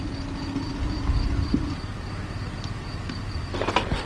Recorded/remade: recorded